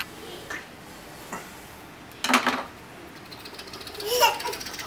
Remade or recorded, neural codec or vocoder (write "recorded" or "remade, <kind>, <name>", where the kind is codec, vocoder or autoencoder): recorded